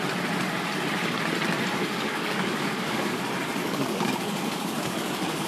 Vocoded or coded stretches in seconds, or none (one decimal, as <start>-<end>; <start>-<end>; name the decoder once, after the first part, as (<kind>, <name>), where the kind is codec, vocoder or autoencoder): 1.8-3.2 (codec, DAC); 3.6-5.5